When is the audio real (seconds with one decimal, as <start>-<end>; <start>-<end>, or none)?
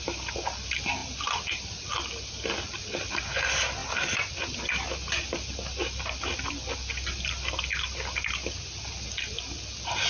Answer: 0.0-10.1